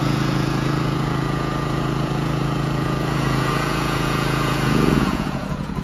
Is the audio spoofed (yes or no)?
yes